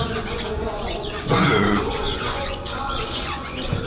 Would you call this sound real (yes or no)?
no